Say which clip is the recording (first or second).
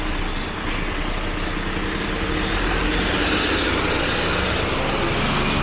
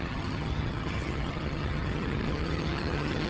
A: first